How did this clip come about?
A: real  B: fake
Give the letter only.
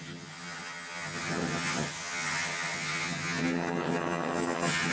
B